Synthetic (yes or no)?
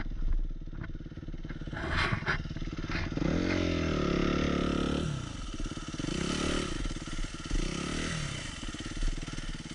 no